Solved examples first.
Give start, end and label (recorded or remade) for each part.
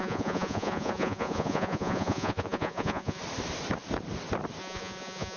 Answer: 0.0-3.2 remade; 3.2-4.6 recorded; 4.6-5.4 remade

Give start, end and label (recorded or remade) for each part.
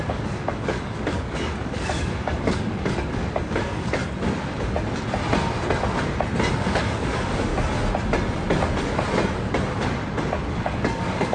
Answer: 0.0-4.0 remade; 4.0-6.6 recorded; 6.6-7.5 remade; 7.5-10.5 recorded; 10.5-11.3 remade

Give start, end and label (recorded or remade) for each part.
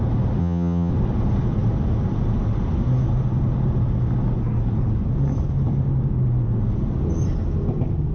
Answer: 0.0-0.4 recorded; 0.4-0.9 remade; 0.9-8.1 recorded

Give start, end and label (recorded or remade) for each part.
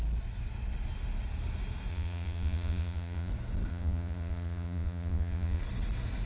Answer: 0.0-1.9 recorded; 1.9-3.3 remade; 3.3-3.7 recorded; 3.7-5.6 remade; 5.6-6.3 recorded